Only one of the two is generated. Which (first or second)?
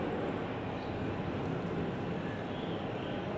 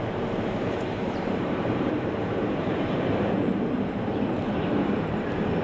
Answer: second